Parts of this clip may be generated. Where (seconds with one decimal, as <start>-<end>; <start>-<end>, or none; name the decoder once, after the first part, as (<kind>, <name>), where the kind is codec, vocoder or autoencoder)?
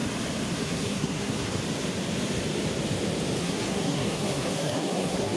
0.6-1.6 (codec, SNAC); 3.4-5.4